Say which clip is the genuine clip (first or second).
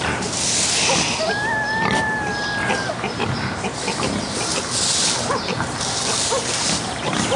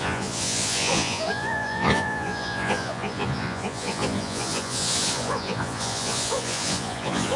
first